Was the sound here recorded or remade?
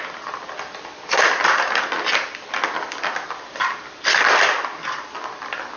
recorded